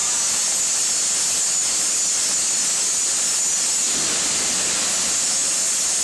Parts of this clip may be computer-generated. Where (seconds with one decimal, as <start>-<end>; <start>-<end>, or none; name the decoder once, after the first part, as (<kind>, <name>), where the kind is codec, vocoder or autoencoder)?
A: none